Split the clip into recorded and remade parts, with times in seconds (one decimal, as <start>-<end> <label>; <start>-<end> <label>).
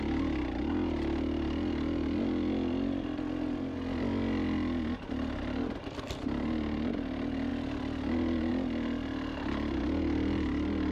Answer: 0.0-10.9 recorded